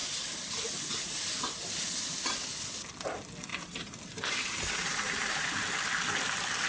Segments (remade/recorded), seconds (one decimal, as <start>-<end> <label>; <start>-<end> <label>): 0.0-3.5 recorded; 3.5-5.7 remade; 5.7-6.7 recorded